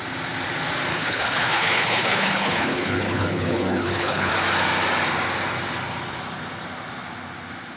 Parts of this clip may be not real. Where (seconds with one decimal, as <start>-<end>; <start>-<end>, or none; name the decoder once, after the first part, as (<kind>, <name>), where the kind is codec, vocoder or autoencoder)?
0.9-4.3 (codec, HILCodec)